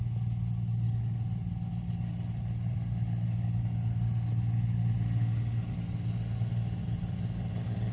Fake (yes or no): no